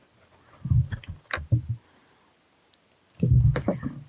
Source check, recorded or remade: recorded